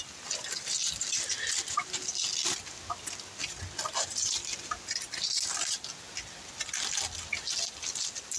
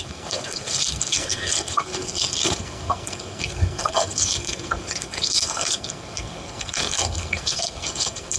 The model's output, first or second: second